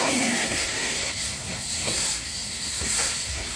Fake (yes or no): yes